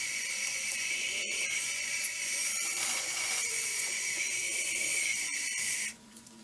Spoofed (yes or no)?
yes